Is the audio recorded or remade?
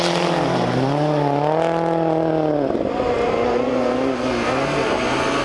recorded